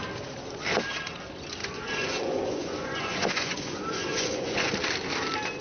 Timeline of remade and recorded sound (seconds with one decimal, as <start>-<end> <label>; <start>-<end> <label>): 0.0-1.6 recorded; 1.6-4.7 remade; 4.7-5.6 recorded